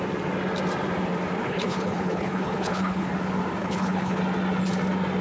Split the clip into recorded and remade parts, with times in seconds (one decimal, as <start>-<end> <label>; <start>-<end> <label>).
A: 0.0-1.4 recorded; 1.4-3.1 remade; 3.1-3.6 recorded; 3.6-4.2 remade; 4.2-5.2 recorded